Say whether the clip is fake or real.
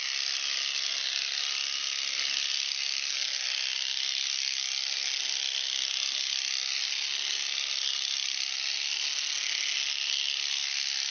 real